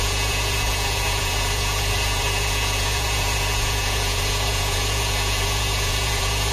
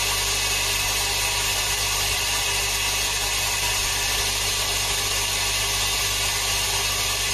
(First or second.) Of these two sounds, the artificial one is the first